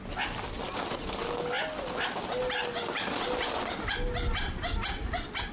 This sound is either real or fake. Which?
real